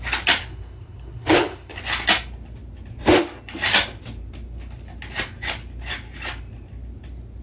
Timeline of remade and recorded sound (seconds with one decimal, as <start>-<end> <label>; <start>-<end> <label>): 0.0-0.4 recorded; 0.4-1.8 remade; 1.8-7.4 recorded